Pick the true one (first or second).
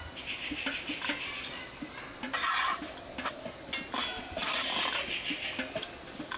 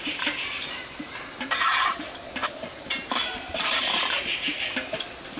first